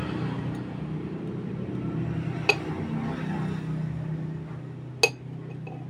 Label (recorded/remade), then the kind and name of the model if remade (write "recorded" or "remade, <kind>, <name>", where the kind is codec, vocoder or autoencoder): recorded